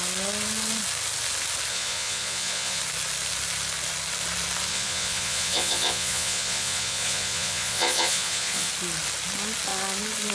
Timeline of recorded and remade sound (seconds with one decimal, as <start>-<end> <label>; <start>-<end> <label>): 0.0-1.7 recorded; 1.7-2.8 remade; 2.8-4.7 recorded; 4.7-8.7 remade; 8.7-10.3 recorded